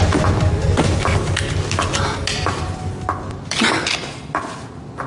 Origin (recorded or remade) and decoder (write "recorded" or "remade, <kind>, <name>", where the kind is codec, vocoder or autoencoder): recorded